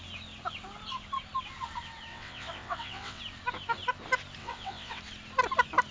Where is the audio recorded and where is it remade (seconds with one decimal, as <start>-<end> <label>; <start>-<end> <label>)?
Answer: 0.0-2.1 recorded; 2.1-3.2 remade; 3.2-4.4 recorded; 4.4-5.0 remade; 5.0-5.9 recorded